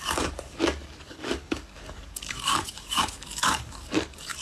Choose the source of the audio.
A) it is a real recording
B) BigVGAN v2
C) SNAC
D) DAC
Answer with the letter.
D